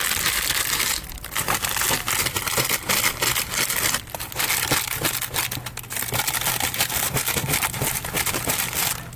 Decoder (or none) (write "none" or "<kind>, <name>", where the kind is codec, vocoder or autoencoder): none